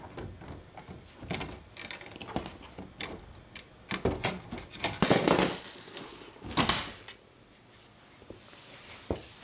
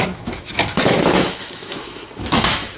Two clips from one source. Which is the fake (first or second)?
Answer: second